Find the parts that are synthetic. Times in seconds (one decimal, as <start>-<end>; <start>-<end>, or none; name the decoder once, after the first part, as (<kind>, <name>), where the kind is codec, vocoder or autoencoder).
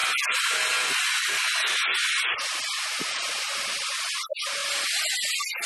none